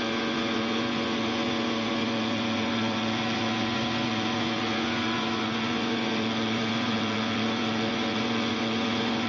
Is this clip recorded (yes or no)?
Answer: no